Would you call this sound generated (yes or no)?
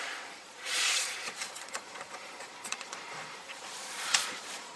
yes